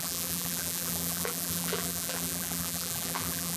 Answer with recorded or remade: remade